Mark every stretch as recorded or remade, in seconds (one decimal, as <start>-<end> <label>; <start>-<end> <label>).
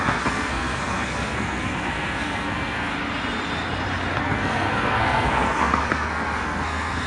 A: 0.0-2.9 remade; 2.9-4.2 recorded; 4.2-7.1 remade